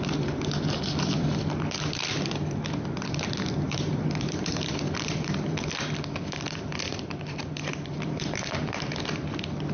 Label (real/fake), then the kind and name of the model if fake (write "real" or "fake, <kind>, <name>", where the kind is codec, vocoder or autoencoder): fake, vocoder, BigVGAN v2